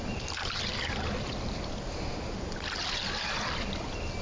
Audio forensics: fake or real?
real